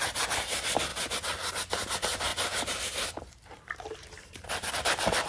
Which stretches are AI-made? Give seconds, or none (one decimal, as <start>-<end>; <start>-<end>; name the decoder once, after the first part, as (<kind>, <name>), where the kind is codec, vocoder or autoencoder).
0.0-0.9 (vocoder, BigVGAN v2); 1.5-5.3